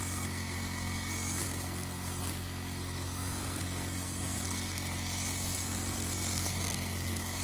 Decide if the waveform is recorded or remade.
remade